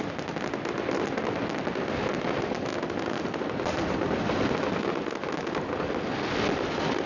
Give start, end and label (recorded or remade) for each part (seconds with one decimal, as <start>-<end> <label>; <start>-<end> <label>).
0.0-7.1 recorded